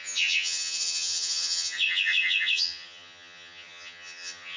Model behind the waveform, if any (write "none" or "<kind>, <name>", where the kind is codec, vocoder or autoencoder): vocoder, HiFi-GAN